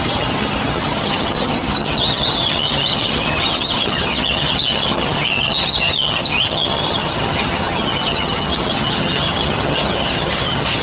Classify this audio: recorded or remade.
remade